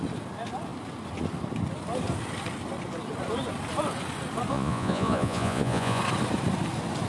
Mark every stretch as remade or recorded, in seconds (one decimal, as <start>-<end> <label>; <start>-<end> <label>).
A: 0.0-4.5 recorded; 4.5-6.0 remade; 6.0-7.1 recorded